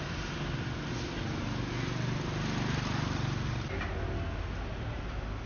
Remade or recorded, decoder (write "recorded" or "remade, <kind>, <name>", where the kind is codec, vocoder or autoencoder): recorded